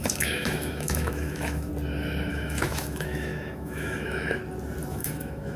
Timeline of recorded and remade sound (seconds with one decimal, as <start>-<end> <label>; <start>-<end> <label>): 0.0-1.7 remade; 1.7-2.3 recorded; 2.3-4.4 remade; 4.4-4.9 recorded; 4.9-5.6 remade